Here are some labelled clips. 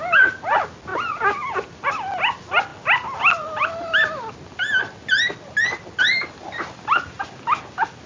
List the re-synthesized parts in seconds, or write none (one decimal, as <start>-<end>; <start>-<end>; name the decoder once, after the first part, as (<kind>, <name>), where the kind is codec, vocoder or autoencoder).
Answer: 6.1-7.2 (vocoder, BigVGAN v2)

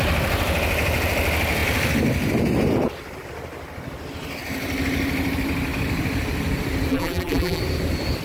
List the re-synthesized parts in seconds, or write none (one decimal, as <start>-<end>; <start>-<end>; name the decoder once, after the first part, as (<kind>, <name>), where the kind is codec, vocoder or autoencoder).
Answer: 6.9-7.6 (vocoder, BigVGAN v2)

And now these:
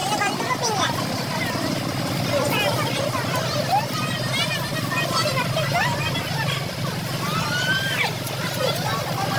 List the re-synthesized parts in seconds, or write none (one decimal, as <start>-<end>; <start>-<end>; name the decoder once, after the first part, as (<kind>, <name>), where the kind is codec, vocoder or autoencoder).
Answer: none